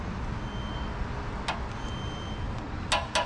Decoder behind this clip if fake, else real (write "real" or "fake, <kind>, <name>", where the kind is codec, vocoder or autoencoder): real